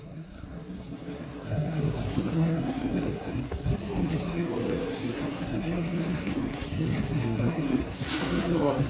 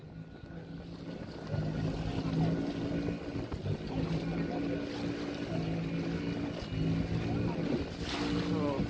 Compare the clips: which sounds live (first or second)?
second